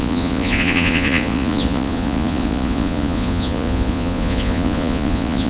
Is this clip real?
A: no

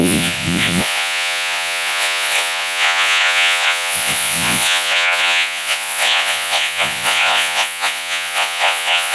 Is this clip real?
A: no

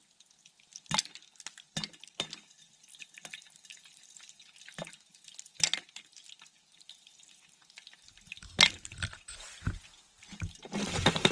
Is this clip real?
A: yes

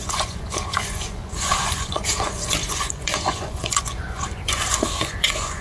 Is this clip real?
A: no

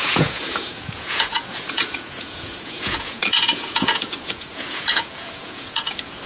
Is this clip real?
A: no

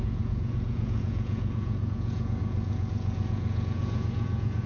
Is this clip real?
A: no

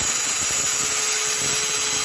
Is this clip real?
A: yes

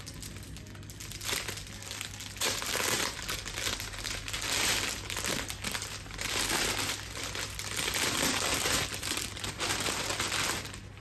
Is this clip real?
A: yes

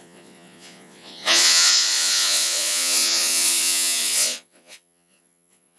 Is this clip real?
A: no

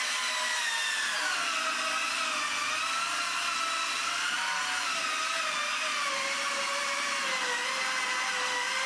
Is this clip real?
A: yes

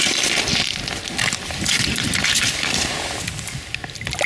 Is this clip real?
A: yes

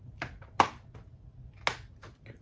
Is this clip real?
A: yes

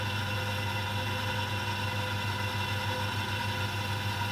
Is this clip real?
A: yes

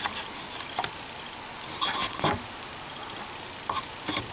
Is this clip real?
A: yes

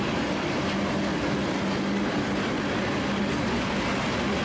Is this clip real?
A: yes